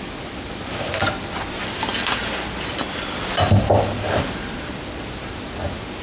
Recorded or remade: recorded